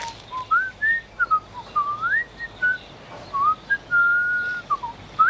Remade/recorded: recorded